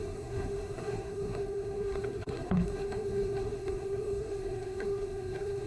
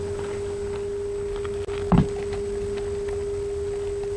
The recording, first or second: second